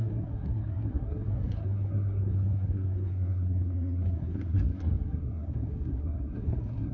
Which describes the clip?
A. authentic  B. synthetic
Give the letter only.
B